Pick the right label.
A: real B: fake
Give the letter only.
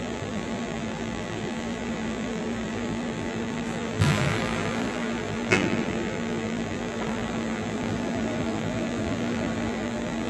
B